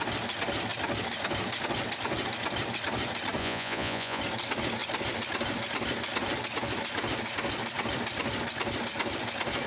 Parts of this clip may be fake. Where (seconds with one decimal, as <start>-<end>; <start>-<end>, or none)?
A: 3.4-4.2